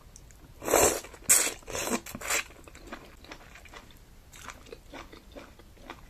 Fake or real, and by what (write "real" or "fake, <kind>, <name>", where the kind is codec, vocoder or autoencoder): real